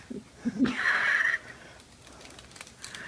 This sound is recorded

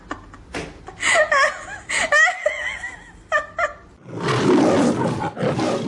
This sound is recorded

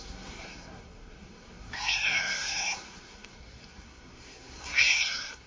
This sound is remade